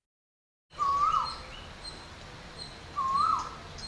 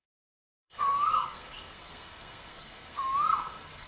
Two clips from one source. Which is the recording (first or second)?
first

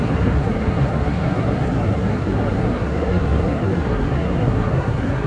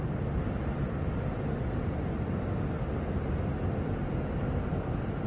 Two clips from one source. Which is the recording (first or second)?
second